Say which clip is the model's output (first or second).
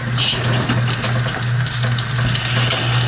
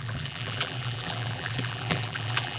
second